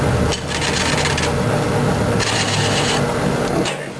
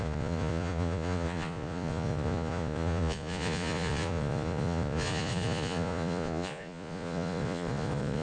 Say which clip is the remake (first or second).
second